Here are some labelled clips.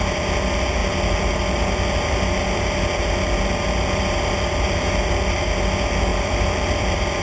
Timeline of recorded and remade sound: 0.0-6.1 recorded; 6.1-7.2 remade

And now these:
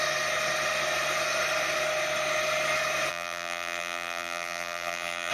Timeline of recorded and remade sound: 0.0-3.1 recorded; 3.1-5.3 remade

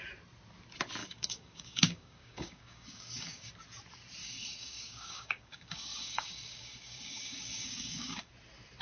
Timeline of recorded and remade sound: 0.0-1.0 recorded; 1.0-3.5 remade; 3.5-4.2 recorded; 4.2-8.3 remade; 8.3-8.8 recorded

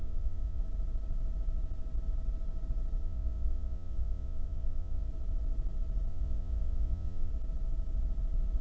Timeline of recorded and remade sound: 0.0-0.6 remade; 0.6-3.0 recorded; 3.0-5.1 remade; 5.1-6.1 recorded; 6.1-7.3 remade; 7.3-8.6 recorded